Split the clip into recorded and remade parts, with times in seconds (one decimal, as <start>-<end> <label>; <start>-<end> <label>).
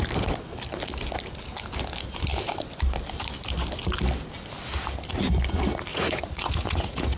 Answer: 0.0-5.9 recorded; 5.9-7.2 remade